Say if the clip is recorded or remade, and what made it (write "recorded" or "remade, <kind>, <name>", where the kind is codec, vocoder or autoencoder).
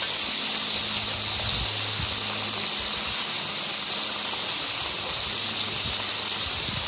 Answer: recorded